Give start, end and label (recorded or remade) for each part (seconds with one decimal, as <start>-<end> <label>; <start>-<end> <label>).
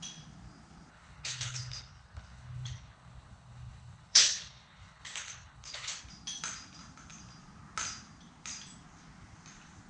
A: 0.0-0.9 recorded; 0.9-6.0 remade; 6.0-9.9 recorded